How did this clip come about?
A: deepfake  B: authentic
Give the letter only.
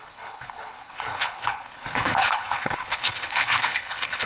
A